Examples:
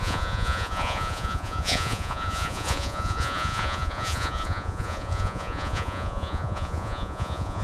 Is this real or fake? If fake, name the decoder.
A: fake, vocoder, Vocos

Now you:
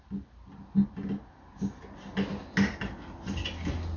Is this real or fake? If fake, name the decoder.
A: real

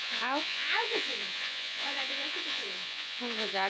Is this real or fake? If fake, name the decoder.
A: fake, vocoder, Vocos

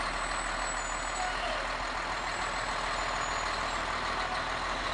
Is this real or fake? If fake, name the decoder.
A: real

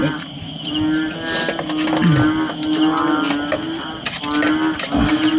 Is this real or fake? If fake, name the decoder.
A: real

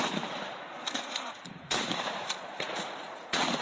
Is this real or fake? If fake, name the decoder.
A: fake, vocoder, Vocos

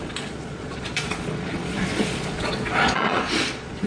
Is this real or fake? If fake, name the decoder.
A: fake, vocoder, Vocos